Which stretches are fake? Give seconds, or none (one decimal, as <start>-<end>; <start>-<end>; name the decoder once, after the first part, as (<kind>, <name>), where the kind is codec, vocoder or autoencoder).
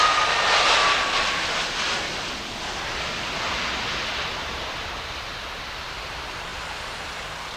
none